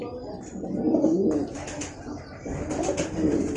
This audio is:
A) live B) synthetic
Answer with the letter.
A